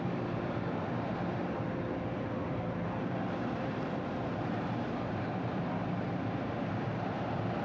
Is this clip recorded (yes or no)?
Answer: no